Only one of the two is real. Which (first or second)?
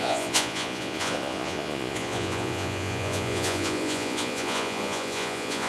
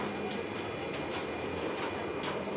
second